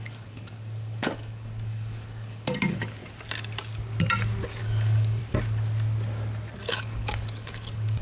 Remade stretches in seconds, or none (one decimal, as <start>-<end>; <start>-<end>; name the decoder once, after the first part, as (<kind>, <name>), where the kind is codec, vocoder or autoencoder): 0.0-3.0 (codec, DAC); 4.6-5.2; 6.7-8.0